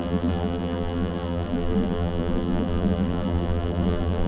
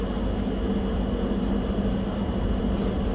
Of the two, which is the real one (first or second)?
second